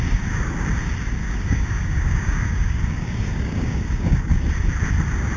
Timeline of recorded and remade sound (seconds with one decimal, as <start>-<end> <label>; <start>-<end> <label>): 0.0-1.2 recorded; 1.2-4.4 remade; 4.4-5.4 recorded